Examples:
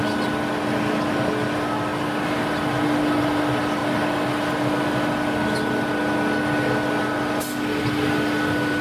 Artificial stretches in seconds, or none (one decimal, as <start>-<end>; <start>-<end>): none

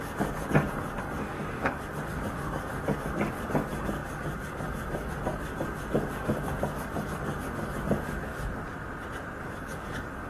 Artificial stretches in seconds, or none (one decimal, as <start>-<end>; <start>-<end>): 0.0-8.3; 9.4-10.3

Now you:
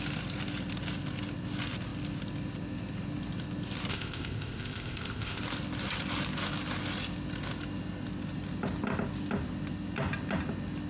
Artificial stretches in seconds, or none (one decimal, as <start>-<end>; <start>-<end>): 3.9-5.4

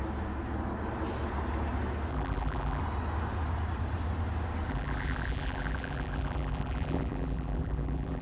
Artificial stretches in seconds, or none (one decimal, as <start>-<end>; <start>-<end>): 2.1-2.8; 4.7-8.2